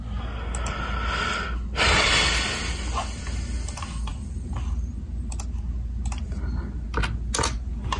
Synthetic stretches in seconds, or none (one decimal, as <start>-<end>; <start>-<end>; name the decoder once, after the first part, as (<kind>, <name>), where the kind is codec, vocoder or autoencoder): none